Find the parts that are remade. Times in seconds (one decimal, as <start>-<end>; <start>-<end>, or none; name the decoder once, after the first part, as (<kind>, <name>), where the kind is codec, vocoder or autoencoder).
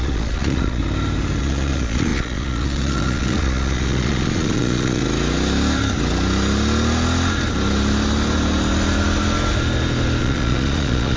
0.0-0.8 (vocoder, Vocos); 1.4-5.0; 10.2-11.2